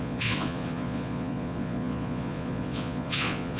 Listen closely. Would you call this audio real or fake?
fake